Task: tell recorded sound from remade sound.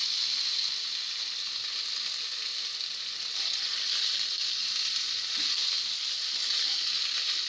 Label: recorded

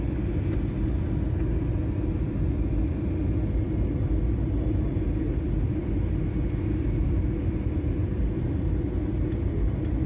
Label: recorded